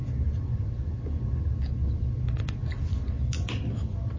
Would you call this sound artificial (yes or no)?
no